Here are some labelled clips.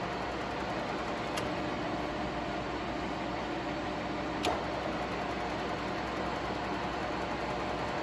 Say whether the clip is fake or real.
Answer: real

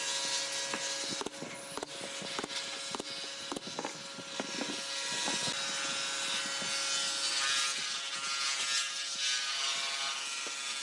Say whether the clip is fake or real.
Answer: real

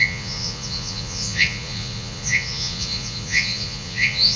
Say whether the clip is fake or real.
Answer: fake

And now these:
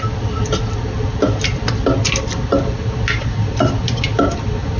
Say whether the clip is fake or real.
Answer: real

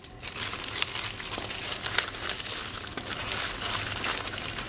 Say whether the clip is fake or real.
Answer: real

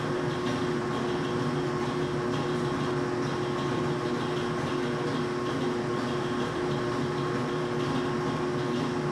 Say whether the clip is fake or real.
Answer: real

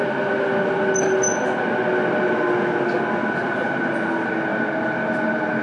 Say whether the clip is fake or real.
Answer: real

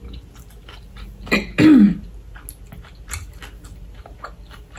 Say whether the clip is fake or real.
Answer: real